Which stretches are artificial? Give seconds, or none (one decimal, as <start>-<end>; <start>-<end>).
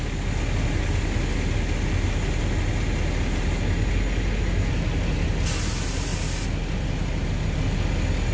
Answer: none